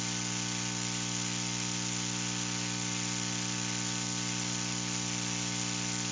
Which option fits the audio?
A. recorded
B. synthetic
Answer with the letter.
A